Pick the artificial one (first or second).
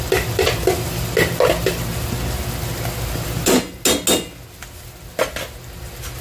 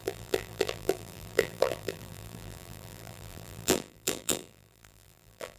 second